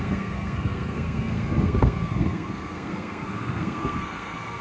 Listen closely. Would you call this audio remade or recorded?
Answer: remade